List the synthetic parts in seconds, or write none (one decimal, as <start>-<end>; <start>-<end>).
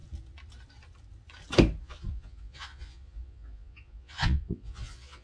1.8-5.2